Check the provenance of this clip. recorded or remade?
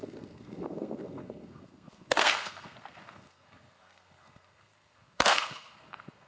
remade